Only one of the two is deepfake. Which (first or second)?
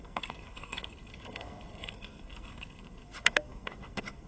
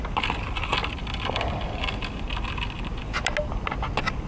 first